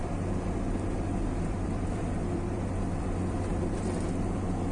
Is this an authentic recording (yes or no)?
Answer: no